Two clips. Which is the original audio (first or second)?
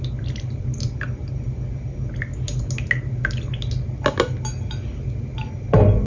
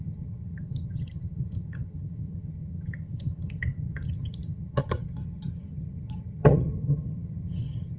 first